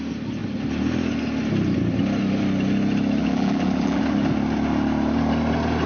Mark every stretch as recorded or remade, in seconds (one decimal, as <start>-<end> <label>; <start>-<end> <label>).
0.0-3.2 recorded; 3.2-4.0 remade; 4.0-5.9 recorded